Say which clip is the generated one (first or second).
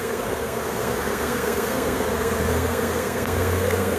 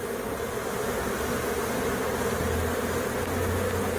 first